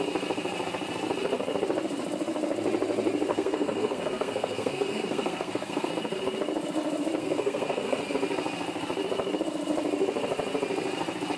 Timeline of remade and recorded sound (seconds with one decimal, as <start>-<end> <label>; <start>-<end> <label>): 0.0-3.3 recorded; 3.3-5.9 remade; 5.9-7.2 recorded; 7.2-8.0 remade; 8.0-11.4 recorded